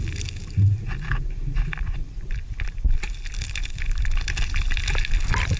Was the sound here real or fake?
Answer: real